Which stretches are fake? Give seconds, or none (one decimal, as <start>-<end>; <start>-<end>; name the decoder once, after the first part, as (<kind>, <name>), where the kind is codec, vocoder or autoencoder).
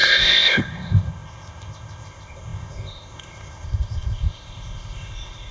0.0-5.5 (codec, ZipCodec)